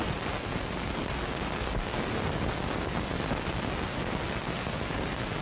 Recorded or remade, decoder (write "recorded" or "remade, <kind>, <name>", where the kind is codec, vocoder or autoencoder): recorded